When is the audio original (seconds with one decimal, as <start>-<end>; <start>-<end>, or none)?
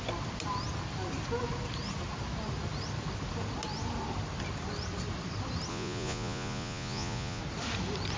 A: 0.0-5.7; 7.4-8.2